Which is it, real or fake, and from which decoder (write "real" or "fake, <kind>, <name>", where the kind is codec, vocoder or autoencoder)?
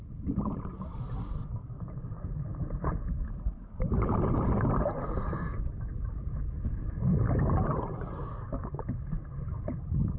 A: real